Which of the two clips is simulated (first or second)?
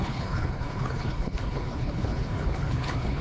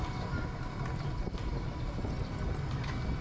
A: first